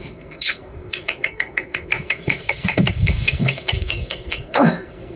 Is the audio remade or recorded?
remade